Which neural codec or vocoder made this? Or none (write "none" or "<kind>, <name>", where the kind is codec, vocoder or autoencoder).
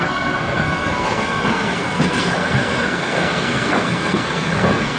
codec, SNAC